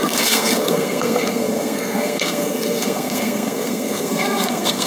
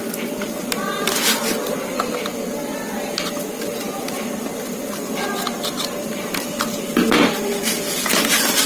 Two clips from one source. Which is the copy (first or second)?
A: first